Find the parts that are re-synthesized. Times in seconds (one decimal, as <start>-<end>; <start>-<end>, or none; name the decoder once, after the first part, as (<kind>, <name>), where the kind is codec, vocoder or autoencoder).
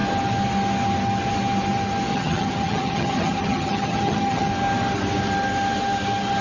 2.1-4.5 (vocoder, HiFi-GAN)